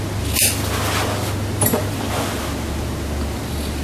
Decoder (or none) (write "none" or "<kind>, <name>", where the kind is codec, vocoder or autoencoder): none